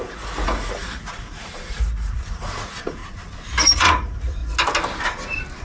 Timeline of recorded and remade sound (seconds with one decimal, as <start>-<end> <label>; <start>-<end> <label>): 0.0-3.0 remade; 3.0-3.7 recorded; 3.7-4.4 remade; 4.4-5.6 recorded